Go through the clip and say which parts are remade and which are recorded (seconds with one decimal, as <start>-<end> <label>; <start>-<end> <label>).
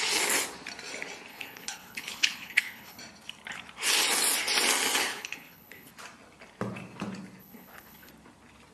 0.0-1.3 recorded; 1.3-3.0 remade; 3.0-5.1 recorded; 5.1-5.9 remade; 5.9-7.4 recorded; 7.4-8.1 remade; 8.1-8.7 recorded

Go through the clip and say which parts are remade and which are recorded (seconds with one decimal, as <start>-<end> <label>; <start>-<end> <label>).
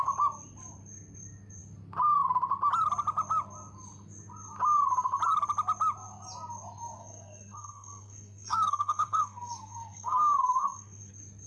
0.0-7.0 recorded; 7.0-11.1 remade; 11.1-11.5 recorded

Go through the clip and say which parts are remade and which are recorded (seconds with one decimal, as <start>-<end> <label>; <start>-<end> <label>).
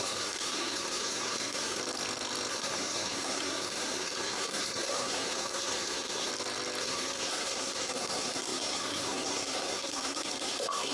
0.0-1.8 remade; 1.8-2.5 recorded; 2.5-6.3 remade; 6.3-6.8 recorded; 6.8-10.9 remade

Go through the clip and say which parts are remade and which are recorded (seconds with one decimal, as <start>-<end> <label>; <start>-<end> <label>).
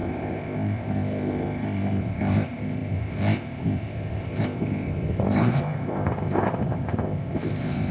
0.0-7.9 remade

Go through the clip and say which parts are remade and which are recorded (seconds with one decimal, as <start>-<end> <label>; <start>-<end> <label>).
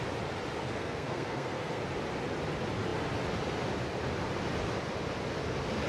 0.0-0.6 recorded; 0.6-1.8 remade; 1.8-5.9 recorded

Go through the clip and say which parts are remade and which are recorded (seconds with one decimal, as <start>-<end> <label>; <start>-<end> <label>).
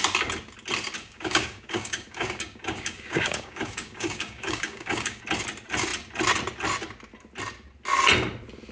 0.0-1.0 recorded; 1.0-5.2 remade; 5.2-8.7 recorded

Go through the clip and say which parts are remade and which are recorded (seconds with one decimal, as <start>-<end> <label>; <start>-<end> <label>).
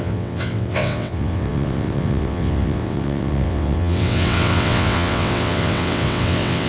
0.0-6.7 remade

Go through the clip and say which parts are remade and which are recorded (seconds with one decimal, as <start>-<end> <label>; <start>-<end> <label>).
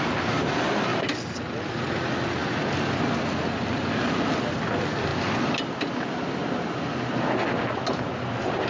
0.0-8.7 recorded